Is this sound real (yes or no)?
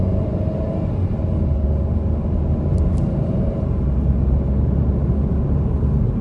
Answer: yes